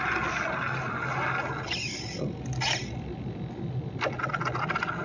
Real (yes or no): yes